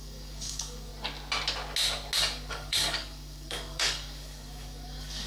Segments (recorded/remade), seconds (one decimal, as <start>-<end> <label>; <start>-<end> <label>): 0.0-0.9 remade; 0.9-2.2 recorded; 2.2-5.3 remade